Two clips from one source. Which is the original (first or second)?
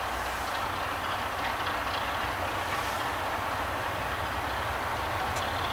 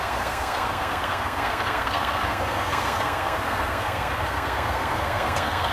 first